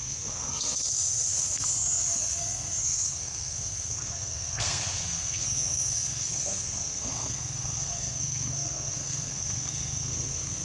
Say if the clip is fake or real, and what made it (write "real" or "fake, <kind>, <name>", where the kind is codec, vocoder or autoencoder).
fake, codec, SNAC